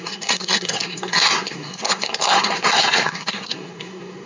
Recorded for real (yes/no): no